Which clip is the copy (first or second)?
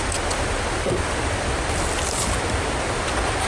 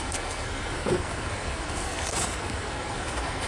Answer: second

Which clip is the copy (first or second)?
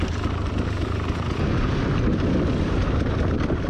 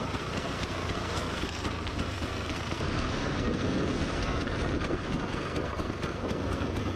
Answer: second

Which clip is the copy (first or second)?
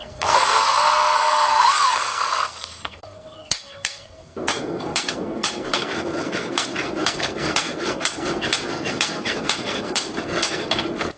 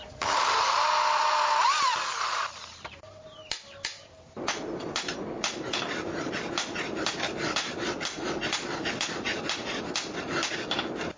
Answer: first